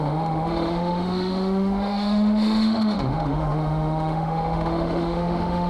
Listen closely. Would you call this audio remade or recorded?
remade